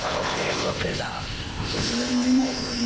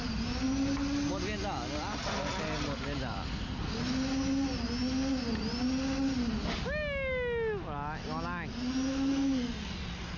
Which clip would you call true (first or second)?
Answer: second